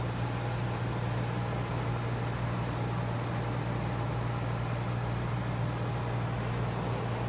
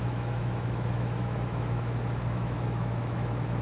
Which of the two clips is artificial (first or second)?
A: second